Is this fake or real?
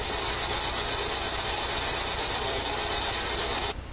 real